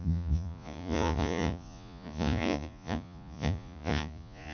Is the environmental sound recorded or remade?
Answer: remade